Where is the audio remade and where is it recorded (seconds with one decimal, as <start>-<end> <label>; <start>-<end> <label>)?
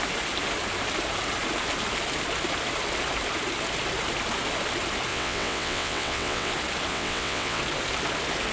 0.0-5.1 recorded; 5.1-6.5 remade; 6.5-6.9 recorded; 6.9-7.6 remade; 7.6-8.5 recorded